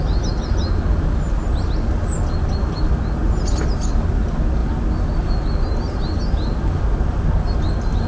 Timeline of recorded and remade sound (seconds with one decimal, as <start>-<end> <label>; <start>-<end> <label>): 0.0-8.1 recorded